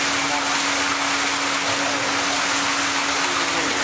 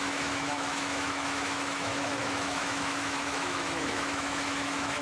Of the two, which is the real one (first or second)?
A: first